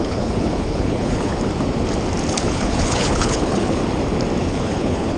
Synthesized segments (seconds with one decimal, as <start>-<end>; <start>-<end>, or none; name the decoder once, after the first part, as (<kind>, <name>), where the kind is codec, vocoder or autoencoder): 0.0-1.3 (codec, HILCodec); 2.4-3.8; 4.4-5.2